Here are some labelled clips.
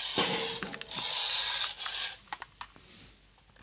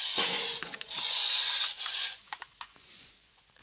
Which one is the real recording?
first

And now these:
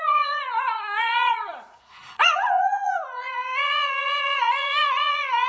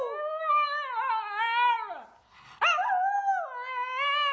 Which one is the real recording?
second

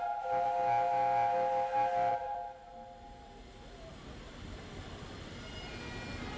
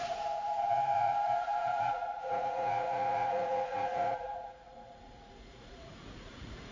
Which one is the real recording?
first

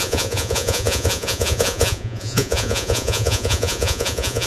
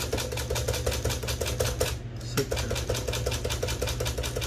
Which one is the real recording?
second